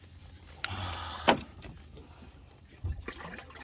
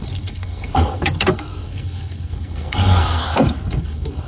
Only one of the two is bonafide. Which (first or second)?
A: first